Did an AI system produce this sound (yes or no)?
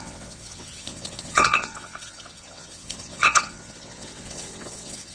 yes